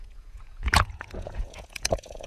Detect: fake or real fake